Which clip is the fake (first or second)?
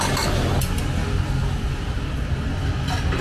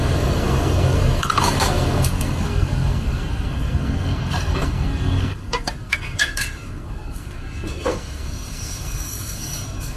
second